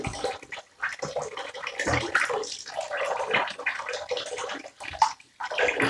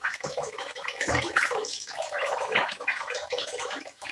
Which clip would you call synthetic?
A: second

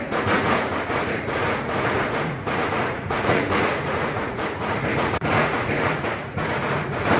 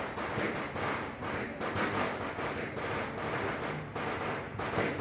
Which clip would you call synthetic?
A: first